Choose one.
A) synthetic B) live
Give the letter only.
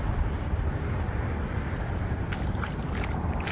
B